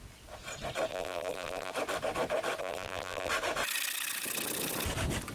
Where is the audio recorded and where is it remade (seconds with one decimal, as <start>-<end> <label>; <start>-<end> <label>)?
0.0-0.9 recorded; 0.9-1.7 remade; 1.7-2.6 recorded; 2.6-3.3 remade; 3.3-5.3 recorded